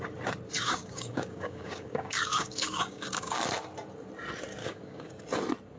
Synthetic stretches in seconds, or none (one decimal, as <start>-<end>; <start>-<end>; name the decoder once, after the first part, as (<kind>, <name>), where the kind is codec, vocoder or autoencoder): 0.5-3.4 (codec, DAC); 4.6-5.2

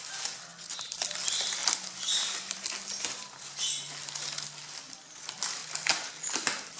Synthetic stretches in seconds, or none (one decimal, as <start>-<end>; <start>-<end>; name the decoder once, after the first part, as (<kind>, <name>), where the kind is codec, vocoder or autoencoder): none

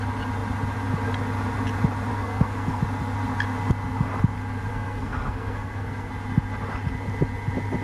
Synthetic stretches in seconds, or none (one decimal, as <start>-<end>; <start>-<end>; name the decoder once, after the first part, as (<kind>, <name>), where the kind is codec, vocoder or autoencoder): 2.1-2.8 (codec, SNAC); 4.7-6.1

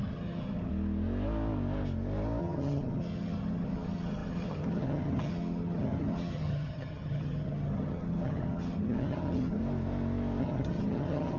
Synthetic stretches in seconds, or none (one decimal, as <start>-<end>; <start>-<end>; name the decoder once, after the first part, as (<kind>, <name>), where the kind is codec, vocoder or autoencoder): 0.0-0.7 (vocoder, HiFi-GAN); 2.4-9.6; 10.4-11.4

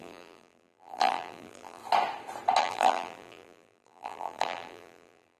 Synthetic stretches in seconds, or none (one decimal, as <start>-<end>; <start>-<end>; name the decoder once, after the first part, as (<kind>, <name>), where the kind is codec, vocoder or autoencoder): 0.0-1.8 (vocoder, BigVGAN v2); 2.6-5.4

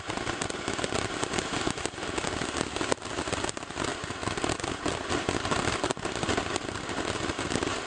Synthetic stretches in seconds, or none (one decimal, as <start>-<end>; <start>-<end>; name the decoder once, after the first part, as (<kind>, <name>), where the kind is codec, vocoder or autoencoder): 3.9-4.7 (vocoder, BigVGAN v2)